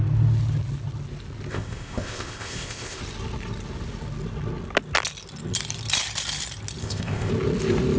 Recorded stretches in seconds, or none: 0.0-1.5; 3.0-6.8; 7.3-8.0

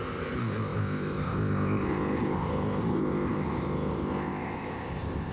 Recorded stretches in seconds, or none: none